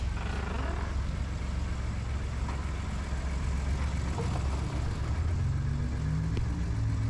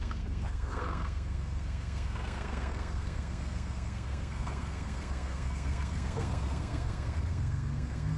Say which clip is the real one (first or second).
first